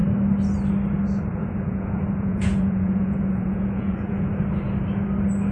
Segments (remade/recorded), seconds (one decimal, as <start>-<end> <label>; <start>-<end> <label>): 0.0-1.3 recorded; 1.3-4.3 remade; 4.3-5.5 recorded